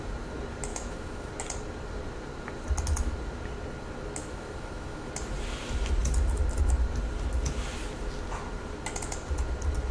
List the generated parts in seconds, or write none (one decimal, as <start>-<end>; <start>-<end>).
0.7-1.3; 4.2-5.1